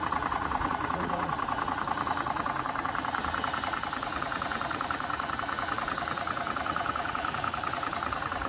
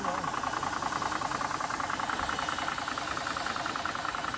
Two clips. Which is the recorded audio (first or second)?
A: second